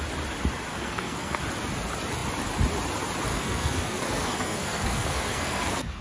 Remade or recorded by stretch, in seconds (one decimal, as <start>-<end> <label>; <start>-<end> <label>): 0.0-0.7 recorded; 0.7-1.4 remade; 1.4-3.3 recorded; 3.3-6.0 remade